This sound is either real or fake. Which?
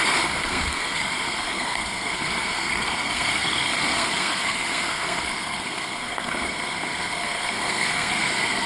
fake